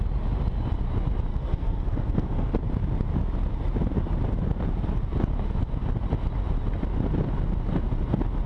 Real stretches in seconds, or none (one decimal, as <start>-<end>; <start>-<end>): 0.0-1.3; 2.5-8.5